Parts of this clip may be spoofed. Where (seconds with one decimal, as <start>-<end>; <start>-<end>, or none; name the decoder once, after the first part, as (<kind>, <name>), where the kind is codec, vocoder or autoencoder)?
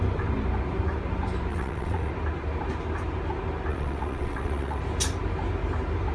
1.5-2.1 (vocoder, WaveNeXt); 3.7-4.8